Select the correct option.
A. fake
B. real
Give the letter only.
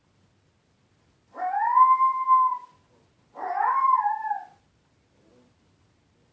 B